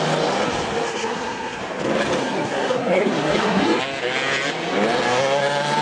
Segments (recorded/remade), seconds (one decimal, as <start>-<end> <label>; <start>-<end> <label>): 0.0-0.9 recorded; 0.9-1.6 remade; 1.6-2.2 recorded; 2.2-3.8 remade; 3.8-5.8 recorded